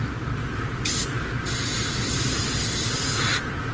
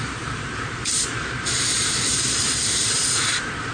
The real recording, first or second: first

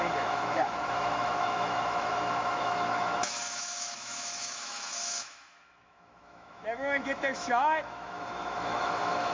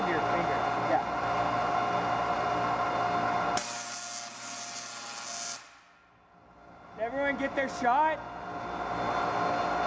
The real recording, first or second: second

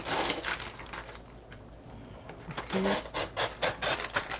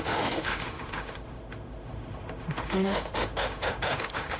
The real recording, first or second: first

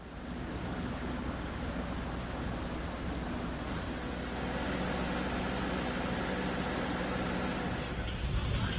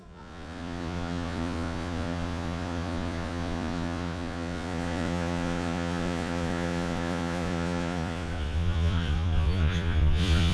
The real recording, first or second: first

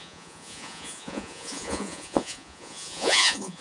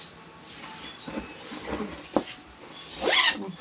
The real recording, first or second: second